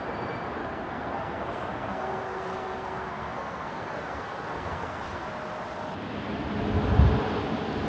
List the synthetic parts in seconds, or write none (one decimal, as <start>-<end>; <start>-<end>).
0.6-5.3